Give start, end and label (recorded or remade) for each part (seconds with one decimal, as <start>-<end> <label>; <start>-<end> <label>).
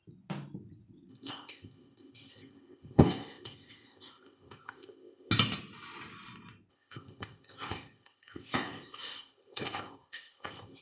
0.0-1.1 recorded; 1.1-5.3 remade; 5.3-6.7 recorded; 6.7-10.8 remade